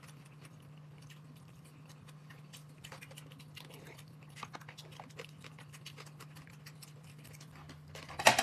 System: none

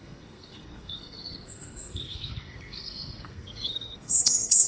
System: codec, SNAC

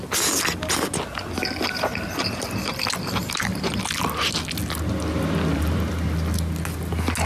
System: none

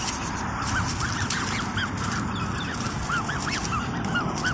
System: none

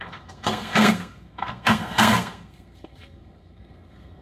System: codec, SNAC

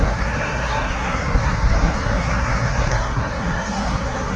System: codec, SNAC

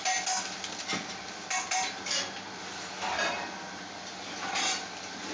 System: none